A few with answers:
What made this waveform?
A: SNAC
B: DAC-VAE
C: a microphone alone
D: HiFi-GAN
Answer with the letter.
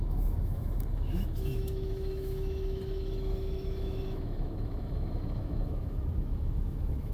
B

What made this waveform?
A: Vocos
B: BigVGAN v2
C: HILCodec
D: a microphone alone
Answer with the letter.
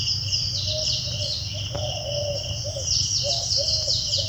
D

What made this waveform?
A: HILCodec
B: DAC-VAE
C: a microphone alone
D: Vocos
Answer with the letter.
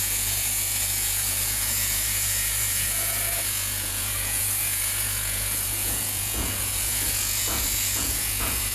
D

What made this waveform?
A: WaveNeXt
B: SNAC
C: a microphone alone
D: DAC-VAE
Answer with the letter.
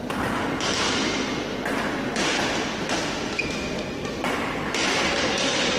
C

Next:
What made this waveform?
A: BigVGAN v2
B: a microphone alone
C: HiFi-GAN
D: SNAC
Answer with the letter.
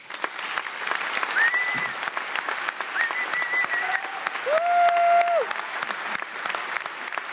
B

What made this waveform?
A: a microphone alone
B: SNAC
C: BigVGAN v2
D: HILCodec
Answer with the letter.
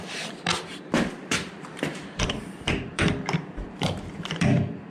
C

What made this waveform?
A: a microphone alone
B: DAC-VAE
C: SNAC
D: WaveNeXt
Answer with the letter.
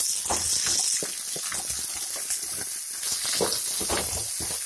A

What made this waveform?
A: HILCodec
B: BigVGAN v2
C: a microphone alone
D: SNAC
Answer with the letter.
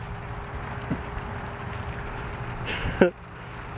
C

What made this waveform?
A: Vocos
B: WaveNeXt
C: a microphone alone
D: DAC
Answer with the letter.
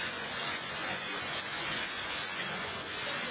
A